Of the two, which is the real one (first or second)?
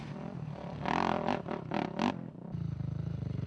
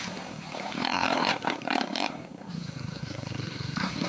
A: first